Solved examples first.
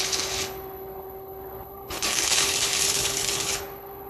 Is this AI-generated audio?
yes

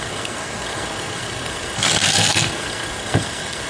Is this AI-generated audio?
yes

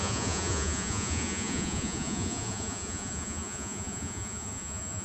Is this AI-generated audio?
yes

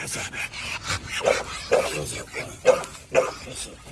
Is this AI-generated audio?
no